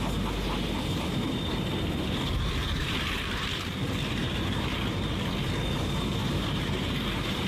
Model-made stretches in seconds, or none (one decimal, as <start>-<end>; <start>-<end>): 2.6-3.8; 4.2-4.9; 6.2-7.5